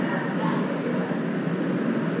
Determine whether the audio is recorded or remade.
recorded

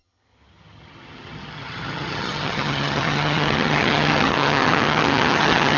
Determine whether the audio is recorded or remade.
remade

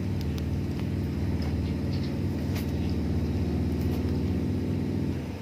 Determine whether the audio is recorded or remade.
recorded